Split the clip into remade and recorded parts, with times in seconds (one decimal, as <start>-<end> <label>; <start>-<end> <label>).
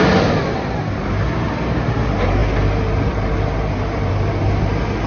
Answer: 0.0-5.1 recorded